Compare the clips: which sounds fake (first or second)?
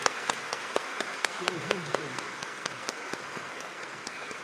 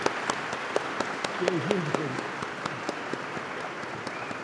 first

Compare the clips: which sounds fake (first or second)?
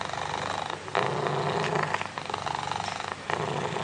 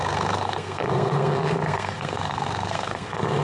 second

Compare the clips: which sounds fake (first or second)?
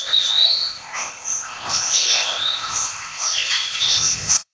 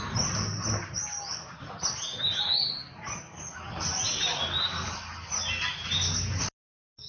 first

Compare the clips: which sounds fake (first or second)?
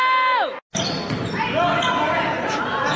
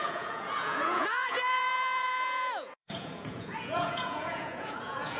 second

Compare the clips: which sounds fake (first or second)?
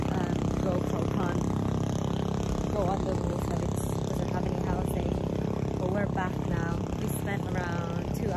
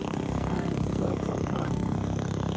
second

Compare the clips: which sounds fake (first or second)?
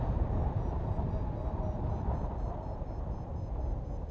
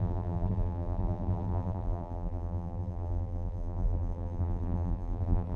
second